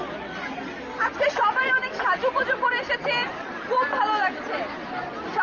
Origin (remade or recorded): recorded